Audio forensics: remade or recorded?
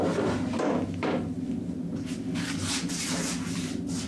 recorded